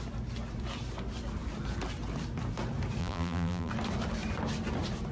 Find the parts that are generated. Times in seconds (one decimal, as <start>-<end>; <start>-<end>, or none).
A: 3.0-3.7